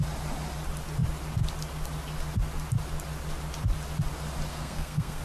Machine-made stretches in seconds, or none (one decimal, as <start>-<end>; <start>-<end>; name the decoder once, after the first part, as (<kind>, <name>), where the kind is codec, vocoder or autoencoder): 4.5-5.2 (codec, SNAC)